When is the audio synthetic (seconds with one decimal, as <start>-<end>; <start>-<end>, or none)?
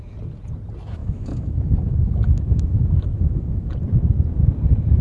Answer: 1.0-3.7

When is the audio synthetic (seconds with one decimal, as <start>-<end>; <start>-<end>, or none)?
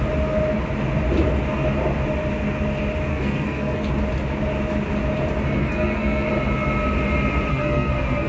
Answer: 3.1-3.9; 5.6-6.3; 7.5-8.3